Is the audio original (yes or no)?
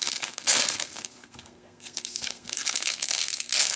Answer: no